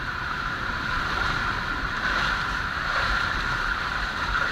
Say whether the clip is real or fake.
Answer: fake